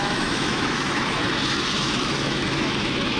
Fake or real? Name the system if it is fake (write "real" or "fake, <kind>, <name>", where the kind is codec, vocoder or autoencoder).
fake, autoencoder, DAC-VAE